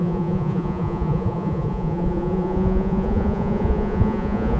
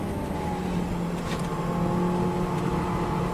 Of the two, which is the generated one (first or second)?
first